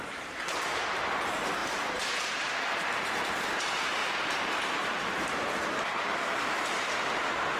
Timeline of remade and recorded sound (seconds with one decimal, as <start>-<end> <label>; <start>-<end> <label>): 0.0-7.6 remade